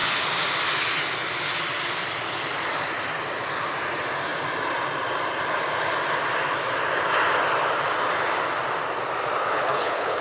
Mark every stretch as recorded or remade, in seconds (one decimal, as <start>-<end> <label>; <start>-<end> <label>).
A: 0.0-9.4 recorded; 9.4-10.2 remade